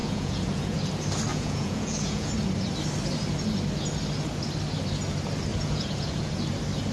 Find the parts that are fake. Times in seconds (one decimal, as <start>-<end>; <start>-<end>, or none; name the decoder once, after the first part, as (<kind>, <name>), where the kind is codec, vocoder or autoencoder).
0.0-0.9 (vocoder, Vocos); 1.3-2.3; 5.5-6.3